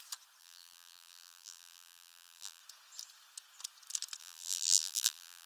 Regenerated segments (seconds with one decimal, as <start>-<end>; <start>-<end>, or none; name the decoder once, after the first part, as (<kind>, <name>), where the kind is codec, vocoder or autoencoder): 0.4-2.6 (vocoder, BigVGAN v2); 4.2-5.5